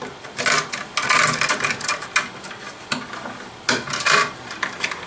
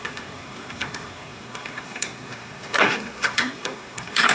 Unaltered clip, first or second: first